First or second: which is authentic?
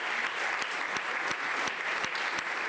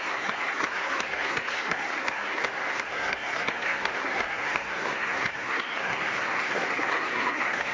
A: first